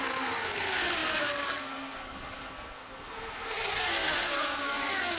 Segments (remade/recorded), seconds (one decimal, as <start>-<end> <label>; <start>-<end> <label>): 0.0-5.2 remade